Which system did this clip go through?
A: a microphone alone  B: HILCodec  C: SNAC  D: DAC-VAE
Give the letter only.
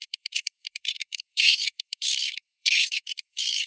C